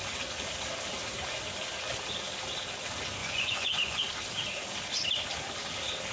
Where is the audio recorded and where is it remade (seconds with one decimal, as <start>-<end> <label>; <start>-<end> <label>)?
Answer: 0.0-3.2 recorded; 3.2-4.0 remade; 4.0-6.1 recorded